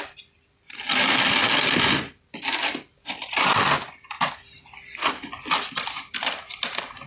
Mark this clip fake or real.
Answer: real